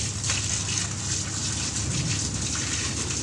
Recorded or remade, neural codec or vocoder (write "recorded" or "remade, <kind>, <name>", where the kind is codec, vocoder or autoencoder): recorded